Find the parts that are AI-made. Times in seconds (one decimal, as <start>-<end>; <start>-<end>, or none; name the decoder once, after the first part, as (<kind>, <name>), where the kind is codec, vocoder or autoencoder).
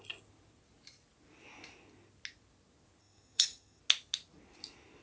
3.0-3.8 (codec, SNAC)